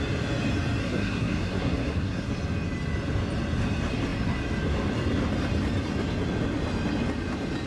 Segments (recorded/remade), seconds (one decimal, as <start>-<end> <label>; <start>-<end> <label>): 0.0-0.8 recorded; 0.8-2.3 remade; 2.3-7.7 recorded